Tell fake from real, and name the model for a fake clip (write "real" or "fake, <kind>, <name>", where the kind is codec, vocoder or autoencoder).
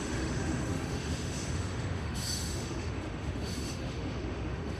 fake, autoencoder, DAC-VAE